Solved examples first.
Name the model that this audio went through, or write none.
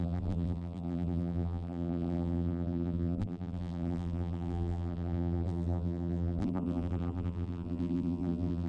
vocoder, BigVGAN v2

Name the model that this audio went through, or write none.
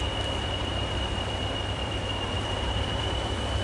vocoder, BigVGAN v2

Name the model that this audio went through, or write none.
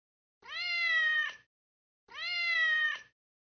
vocoder, BigVGAN v2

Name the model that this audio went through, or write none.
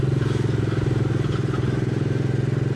none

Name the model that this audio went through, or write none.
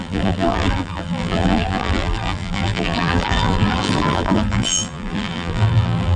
vocoder, BigVGAN v2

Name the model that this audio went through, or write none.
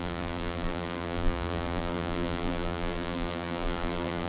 vocoder, BigVGAN v2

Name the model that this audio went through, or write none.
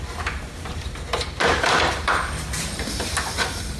vocoder, BigVGAN v2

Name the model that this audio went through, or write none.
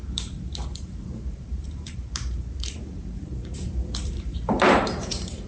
vocoder, BigVGAN v2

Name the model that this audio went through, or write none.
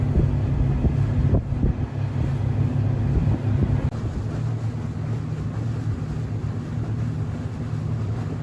none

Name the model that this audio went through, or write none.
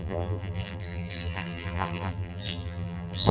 vocoder, BigVGAN v2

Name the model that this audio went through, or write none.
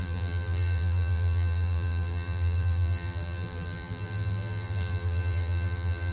vocoder, BigVGAN v2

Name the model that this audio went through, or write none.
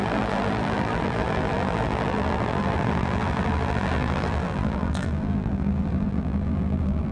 vocoder, BigVGAN v2